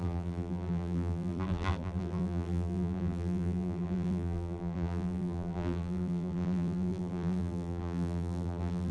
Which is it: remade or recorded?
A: remade